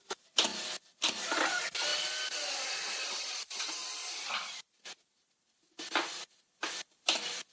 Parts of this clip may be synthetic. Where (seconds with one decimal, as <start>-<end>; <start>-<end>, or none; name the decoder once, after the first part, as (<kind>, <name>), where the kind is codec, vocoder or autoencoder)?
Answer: none

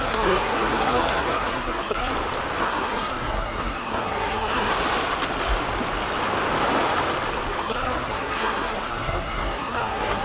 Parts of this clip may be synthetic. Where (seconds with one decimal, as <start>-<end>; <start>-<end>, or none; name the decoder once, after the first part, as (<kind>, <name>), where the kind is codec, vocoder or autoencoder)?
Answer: 0.0-2.1 (codec, SNAC); 2.6-4.7; 7.6-10.2

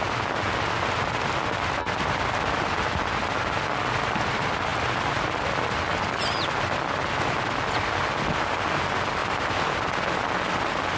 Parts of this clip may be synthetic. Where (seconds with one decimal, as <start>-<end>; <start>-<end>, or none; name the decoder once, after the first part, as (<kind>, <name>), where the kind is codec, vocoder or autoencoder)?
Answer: none